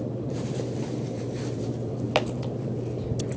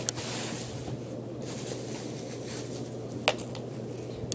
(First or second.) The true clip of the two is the second